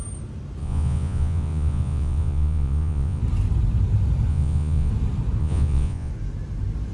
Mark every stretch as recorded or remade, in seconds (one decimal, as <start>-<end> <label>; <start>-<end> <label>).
0.0-0.6 recorded; 0.6-3.2 remade; 3.2-4.3 recorded; 4.3-4.9 remade; 4.9-5.4 recorded; 5.4-6.1 remade; 6.1-6.9 recorded